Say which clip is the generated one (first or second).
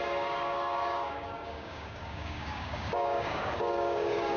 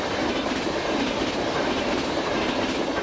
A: first